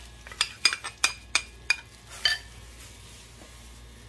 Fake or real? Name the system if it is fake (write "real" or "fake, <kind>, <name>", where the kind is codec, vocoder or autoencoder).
real